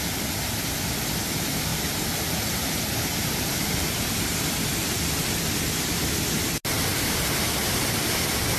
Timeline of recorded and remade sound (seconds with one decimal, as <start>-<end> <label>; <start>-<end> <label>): 0.0-1.7 recorded; 1.7-4.1 remade; 4.1-6.9 recorded; 6.9-8.1 remade; 8.1-8.6 recorded